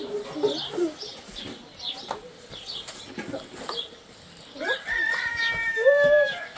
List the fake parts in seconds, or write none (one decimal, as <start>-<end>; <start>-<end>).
5.3-6.6